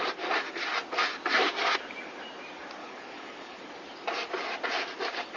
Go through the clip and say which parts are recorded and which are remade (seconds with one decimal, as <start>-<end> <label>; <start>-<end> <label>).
0.0-2.8 recorded; 2.8-3.6 remade; 3.6-5.4 recorded